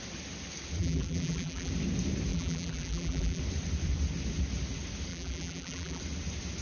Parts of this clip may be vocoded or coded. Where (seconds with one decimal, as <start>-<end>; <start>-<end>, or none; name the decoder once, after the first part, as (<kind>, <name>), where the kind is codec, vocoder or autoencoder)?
0.8-1.7 (vocoder, BigVGAN v2); 2.3-3.4; 5.1-6.0